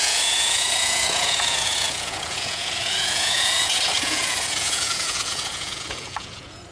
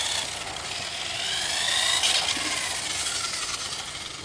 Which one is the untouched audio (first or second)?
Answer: second